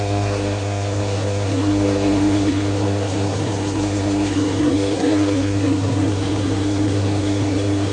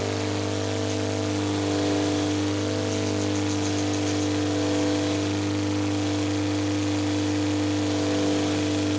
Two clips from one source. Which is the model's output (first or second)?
first